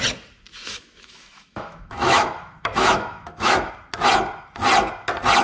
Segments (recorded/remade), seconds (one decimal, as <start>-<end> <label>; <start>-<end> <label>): 0.0-0.5 recorded; 0.5-3.7 remade; 3.7-5.4 recorded